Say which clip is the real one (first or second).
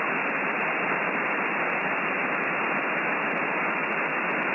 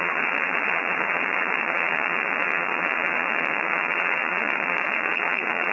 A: first